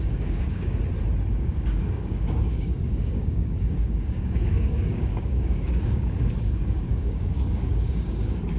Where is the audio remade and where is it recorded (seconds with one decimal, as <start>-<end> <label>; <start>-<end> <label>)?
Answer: 0.0-0.8 remade; 0.8-1.3 recorded; 1.3-8.6 remade